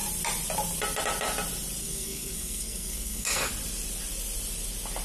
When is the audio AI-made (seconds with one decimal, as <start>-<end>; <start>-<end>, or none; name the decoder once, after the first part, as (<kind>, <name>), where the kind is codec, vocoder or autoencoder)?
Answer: 1.8-3.5 (codec, SNAC)